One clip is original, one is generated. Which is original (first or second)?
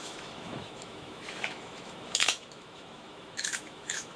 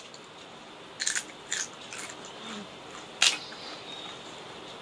second